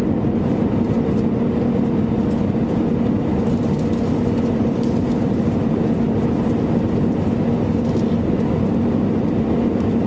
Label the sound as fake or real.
real